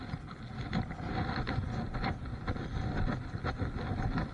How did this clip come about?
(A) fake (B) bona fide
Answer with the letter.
B